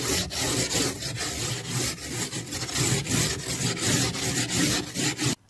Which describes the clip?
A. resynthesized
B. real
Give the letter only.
B